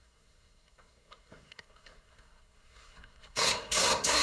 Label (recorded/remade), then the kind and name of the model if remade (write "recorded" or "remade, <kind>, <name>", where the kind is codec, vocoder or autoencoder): remade, codec, SNAC